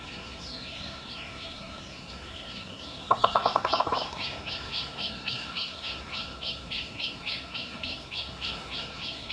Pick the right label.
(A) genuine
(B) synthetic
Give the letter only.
B